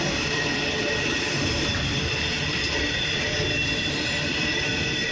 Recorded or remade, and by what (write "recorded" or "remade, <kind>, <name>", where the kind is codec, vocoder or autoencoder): remade, vocoder, BigVGAN v2